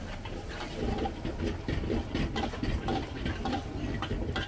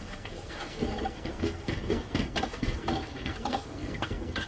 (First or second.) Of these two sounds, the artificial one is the second